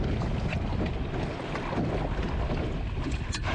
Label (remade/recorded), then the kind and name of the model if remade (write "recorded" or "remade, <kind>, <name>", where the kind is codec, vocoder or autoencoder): recorded